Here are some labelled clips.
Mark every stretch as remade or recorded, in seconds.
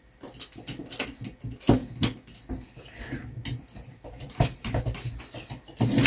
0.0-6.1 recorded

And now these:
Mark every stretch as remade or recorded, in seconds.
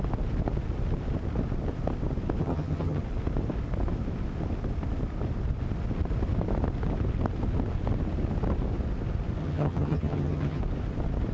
0.0-2.4 recorded; 2.4-3.0 remade; 3.0-9.4 recorded; 9.4-10.6 remade; 10.6-11.3 recorded